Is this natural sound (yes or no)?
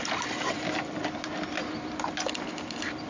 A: yes